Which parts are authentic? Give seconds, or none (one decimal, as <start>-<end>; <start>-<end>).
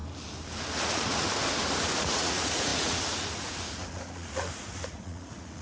0.0-0.8; 1.4-1.9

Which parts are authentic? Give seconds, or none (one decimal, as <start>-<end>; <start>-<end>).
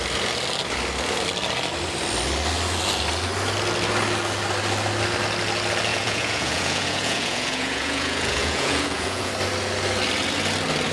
0.0-5.9; 9.3-10.9